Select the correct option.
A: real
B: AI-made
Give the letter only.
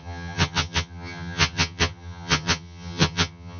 B